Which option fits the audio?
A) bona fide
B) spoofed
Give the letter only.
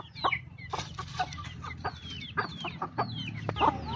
A